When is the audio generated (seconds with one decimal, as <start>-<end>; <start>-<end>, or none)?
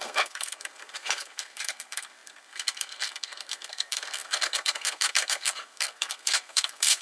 0.0-7.0